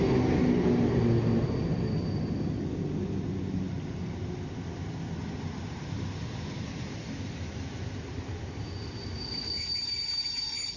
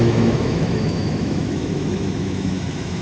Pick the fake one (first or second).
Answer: second